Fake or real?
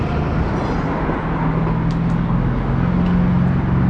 real